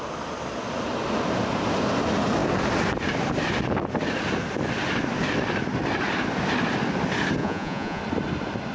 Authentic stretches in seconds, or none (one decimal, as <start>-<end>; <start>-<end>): 0.0-7.4; 8.0-8.7